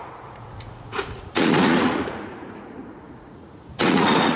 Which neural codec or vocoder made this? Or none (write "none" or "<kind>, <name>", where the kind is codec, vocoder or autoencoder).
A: vocoder, Vocos